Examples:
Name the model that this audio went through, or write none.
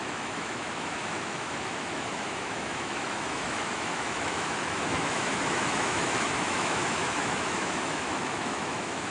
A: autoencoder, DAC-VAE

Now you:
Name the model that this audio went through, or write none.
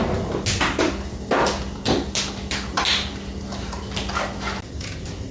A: none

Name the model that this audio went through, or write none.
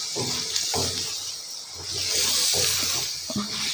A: none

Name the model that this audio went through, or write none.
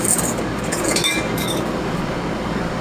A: codec, DAC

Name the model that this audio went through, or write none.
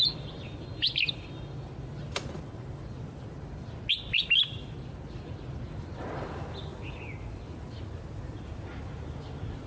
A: none